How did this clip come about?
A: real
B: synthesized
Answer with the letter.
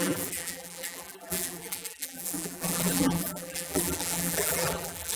B